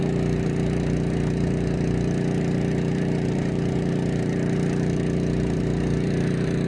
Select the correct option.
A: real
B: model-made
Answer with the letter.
B